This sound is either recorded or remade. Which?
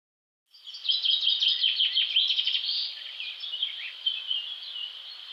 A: recorded